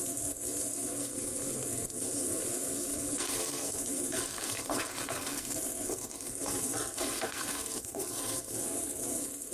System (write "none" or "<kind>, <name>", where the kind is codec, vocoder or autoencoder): codec, SNAC